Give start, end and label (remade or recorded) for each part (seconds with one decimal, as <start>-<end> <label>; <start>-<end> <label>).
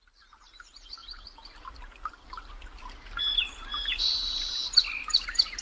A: 0.0-1.0 recorded; 1.0-2.5 remade; 2.5-3.7 recorded; 3.7-4.5 remade; 4.5-5.6 recorded